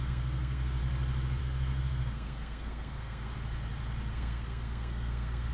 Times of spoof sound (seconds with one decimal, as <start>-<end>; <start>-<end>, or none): 0.0-0.8; 1.4-3.3; 4.1-5.5